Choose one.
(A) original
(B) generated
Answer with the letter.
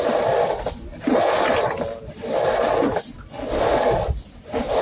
A